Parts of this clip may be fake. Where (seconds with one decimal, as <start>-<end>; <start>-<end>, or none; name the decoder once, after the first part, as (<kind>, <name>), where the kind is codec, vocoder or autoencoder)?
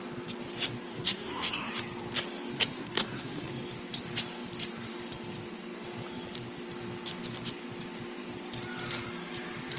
0.9-1.7 (codec, SNAC); 2.7-3.5